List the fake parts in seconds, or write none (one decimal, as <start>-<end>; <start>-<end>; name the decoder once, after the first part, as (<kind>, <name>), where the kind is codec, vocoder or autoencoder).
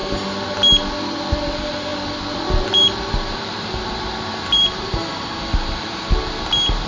1.9-6.0 (vocoder, BigVGAN v2)